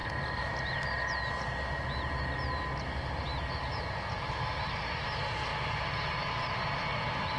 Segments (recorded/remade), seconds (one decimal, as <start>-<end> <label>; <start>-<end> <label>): 0.0-7.4 recorded